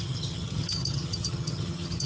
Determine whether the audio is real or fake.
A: fake